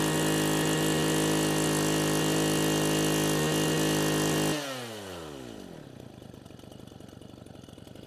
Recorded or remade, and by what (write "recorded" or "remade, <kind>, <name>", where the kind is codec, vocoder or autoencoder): recorded